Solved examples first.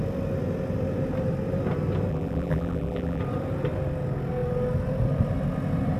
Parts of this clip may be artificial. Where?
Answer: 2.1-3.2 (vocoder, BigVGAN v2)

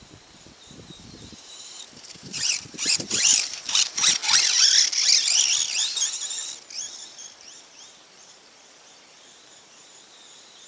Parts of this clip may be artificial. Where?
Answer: 0.0-4.2 (vocoder, BigVGAN v2); 5.8-6.4; 7.4-10.7

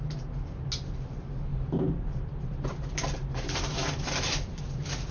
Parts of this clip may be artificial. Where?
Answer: 1.5-4.6 (vocoder, BigVGAN v2)

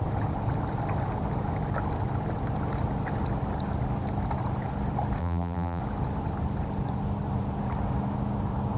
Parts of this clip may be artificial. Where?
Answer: 5.2-5.8 (vocoder, BigVGAN v2)